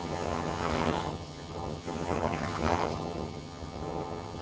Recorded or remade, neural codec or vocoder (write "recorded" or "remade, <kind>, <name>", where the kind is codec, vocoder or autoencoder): remade, vocoder, HiFi-GAN